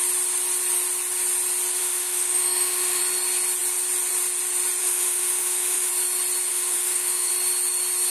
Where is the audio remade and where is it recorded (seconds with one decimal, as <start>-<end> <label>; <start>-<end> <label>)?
0.0-1.8 recorded; 1.8-3.0 remade; 3.0-4.8 recorded; 4.8-5.9 remade; 5.9-6.5 recorded; 6.5-7.3 remade; 7.3-8.1 recorded